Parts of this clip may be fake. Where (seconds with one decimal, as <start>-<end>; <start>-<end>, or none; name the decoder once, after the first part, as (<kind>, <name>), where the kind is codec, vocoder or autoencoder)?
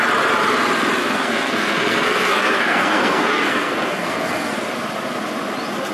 1.0-4.5 (codec, SNAC)